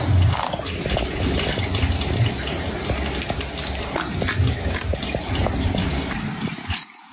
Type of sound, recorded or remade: recorded